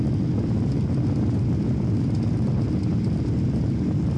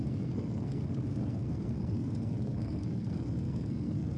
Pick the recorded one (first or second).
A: first